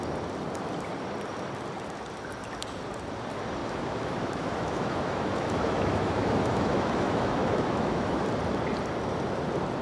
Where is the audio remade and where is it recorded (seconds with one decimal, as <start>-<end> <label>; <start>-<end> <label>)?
0.0-3.6 recorded; 3.6-8.2 remade; 8.2-9.8 recorded